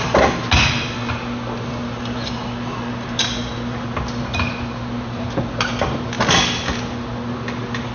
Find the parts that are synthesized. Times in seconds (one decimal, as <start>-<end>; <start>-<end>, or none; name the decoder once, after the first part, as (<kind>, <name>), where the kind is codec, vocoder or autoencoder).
none